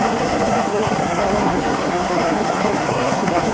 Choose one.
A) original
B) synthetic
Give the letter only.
B